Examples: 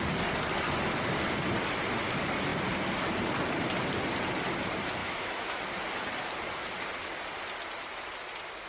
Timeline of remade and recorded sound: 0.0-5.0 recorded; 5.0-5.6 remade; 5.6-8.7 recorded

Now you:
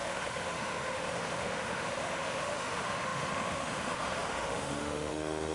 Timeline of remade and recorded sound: 0.0-5.5 remade

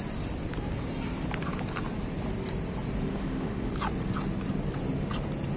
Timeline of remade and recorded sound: 0.0-3.1 recorded; 3.1-3.7 remade; 3.7-5.6 recorded

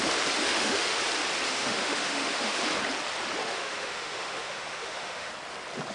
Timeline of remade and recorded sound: 0.0-0.4 recorded; 0.4-1.0 remade; 1.0-1.5 recorded; 1.5-2.6 remade; 2.6-3.4 recorded; 3.4-5.3 remade; 5.3-5.9 recorded

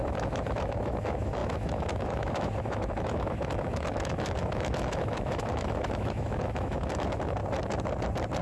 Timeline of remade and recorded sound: 0.0-7.4 remade; 7.4-8.4 recorded

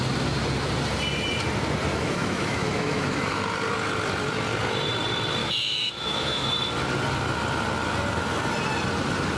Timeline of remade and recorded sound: 0.0-1.9 recorded; 1.9-3.4 remade; 3.4-5.4 recorded; 5.4-6.5 remade; 6.5-9.4 recorded

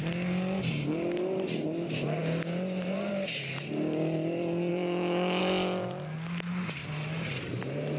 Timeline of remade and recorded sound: 0.0-4.7 recorded; 4.7-5.4 remade; 5.4-8.0 recorded